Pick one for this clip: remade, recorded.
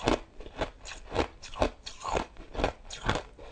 recorded